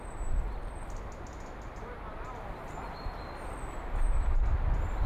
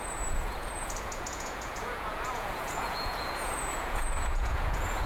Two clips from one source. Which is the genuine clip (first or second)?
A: first